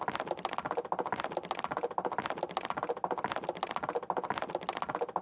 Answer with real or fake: real